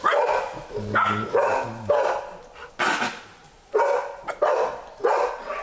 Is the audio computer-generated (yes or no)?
no